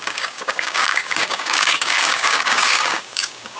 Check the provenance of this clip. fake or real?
fake